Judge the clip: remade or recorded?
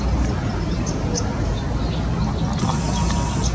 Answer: recorded